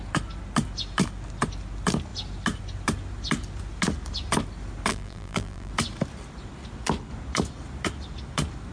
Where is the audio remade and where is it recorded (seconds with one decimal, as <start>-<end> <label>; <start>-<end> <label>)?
0.0-4.9 recorded; 4.9-5.7 remade; 5.7-8.7 recorded